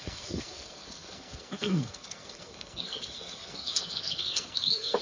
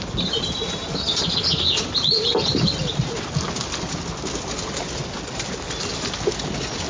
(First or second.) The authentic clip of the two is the second